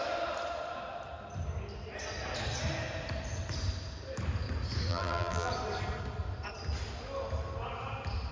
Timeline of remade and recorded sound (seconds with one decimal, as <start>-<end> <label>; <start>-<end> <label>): 0.0-4.9 recorded; 4.9-5.5 remade; 5.5-8.3 recorded